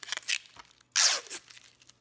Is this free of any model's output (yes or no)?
yes